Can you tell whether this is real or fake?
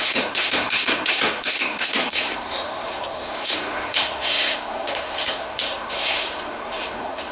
fake